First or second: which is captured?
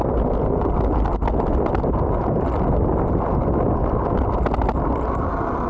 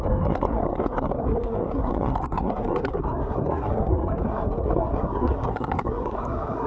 first